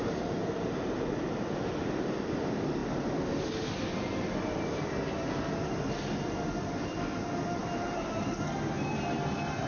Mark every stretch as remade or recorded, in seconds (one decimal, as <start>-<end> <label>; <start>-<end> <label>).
0.0-9.7 recorded